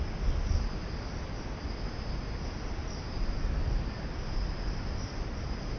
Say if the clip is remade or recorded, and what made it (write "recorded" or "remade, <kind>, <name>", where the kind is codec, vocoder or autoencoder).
recorded